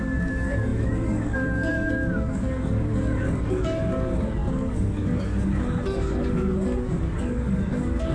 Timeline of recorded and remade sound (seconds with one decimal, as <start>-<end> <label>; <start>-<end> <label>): 0.0-8.1 remade